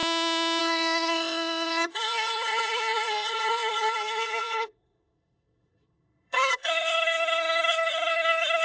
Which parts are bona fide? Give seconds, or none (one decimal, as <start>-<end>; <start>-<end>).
0.0-0.6